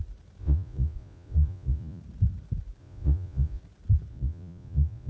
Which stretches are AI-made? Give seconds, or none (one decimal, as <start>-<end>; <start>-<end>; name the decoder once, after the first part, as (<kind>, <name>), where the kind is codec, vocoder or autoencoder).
0.4-2.0 (vocoder, Vocos); 2.8-3.6; 4.1-5.1